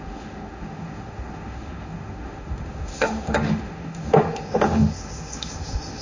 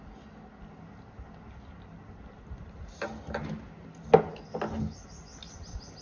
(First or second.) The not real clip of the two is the first